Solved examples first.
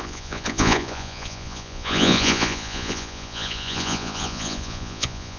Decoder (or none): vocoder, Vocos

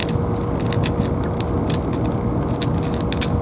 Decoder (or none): none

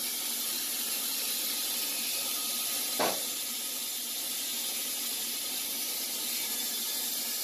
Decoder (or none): vocoder, BigVGAN v2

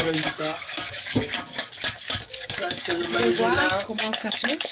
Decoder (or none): codec, DAC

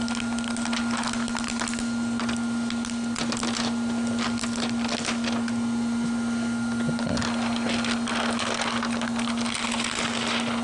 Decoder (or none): none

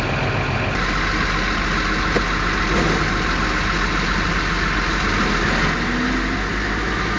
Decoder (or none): none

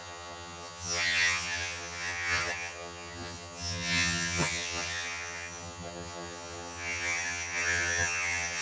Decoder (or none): vocoder, HiFi-GAN